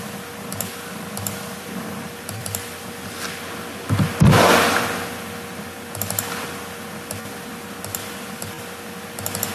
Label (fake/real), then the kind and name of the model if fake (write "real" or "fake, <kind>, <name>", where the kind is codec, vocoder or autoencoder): real